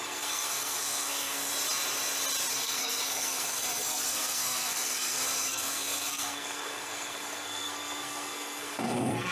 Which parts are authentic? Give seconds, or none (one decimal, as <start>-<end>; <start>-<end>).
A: 1.5-2.5